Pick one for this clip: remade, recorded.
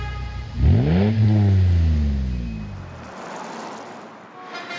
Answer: recorded